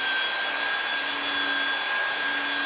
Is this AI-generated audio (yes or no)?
no